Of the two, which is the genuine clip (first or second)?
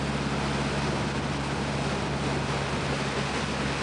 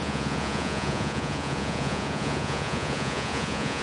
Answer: first